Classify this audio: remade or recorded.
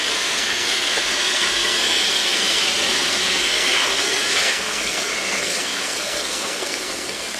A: remade